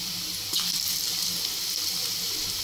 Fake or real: fake